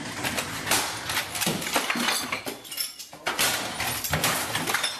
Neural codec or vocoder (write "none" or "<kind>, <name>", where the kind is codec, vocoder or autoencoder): none